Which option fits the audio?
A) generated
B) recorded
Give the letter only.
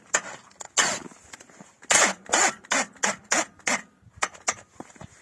B